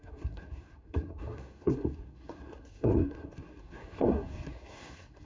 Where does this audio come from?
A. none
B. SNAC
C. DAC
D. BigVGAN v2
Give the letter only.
B